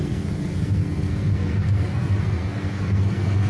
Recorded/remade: remade